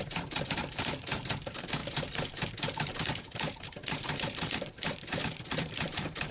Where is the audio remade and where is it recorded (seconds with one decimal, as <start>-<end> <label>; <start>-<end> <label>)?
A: 0.0-6.3 remade